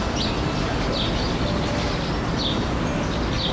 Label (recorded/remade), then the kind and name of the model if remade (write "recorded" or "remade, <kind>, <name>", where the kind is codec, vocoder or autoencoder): remade, vocoder, BigVGAN v2